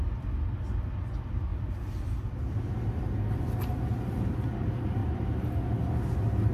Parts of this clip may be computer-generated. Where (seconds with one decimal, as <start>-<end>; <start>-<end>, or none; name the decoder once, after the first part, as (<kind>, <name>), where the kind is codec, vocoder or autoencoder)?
none